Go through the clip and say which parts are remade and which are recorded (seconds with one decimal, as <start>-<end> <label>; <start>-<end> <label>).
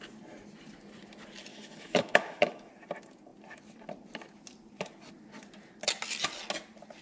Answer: 0.0-1.5 recorded; 1.5-2.7 remade; 2.7-7.0 recorded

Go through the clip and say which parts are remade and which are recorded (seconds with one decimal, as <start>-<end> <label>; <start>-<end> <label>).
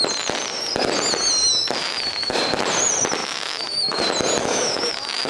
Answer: 0.0-1.8 recorded; 1.8-2.4 remade; 2.4-3.2 recorded; 3.2-4.0 remade; 4.0-4.4 recorded; 4.4-5.3 remade